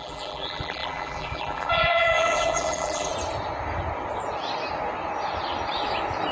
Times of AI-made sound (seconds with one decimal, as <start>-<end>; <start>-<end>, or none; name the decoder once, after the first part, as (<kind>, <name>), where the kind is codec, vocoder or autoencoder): 0.0-3.1 (vocoder, BigVGAN v2)